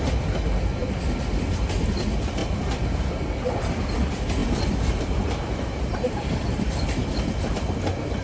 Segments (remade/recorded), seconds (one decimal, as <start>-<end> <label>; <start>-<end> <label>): 0.0-4.4 recorded; 4.4-6.4 remade; 6.4-8.2 recorded

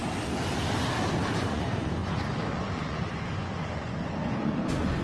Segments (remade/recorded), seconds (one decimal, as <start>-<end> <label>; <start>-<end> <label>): 0.0-1.4 recorded; 1.4-5.0 remade

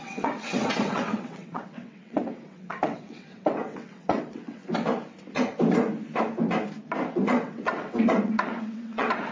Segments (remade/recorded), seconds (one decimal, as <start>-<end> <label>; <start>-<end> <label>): 0.0-4.6 remade; 4.6-7.1 recorded; 7.1-9.3 remade

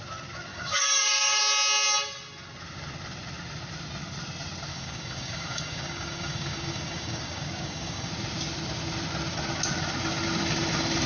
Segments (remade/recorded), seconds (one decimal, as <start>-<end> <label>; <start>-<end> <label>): 0.0-0.5 recorded; 0.5-1.4 remade; 1.4-4.7 recorded; 4.7-8.1 remade; 8.1-11.1 recorded